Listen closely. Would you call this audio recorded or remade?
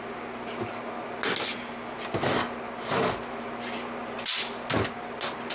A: recorded